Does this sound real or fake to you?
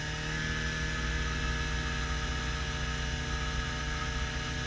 real